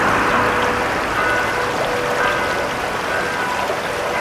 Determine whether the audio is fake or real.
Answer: real